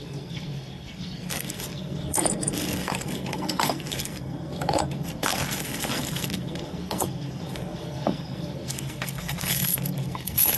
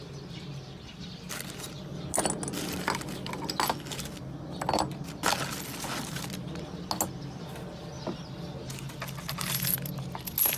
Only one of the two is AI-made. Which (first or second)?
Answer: first